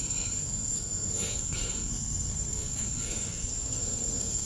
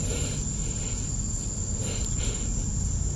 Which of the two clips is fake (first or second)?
first